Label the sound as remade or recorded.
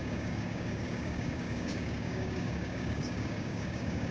remade